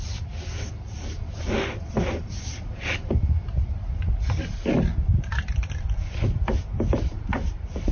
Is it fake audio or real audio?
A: real